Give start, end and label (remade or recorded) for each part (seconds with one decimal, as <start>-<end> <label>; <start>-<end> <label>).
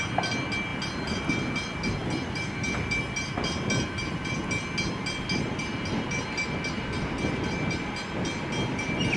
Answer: 0.0-9.2 recorded